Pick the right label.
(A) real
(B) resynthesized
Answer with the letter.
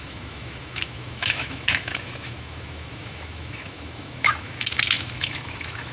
B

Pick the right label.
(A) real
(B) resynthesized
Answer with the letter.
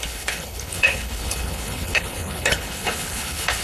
B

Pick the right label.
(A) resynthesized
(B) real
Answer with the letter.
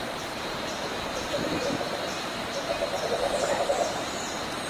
A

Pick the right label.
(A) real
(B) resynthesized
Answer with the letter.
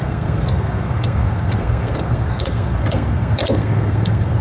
B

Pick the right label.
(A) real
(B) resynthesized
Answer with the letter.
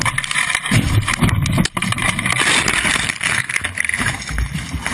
A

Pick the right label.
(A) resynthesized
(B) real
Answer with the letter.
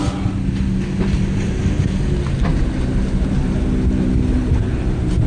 B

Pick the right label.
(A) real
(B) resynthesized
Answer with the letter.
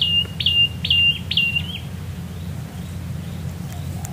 A